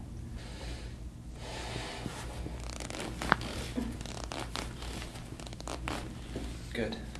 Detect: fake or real real